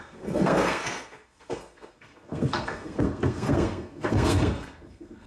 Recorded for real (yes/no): no